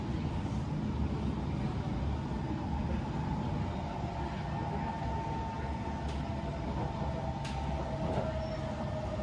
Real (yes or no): yes